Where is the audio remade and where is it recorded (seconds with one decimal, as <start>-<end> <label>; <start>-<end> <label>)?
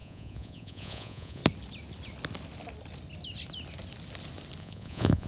0.0-1.4 remade; 1.4-4.6 recorded; 4.6-5.3 remade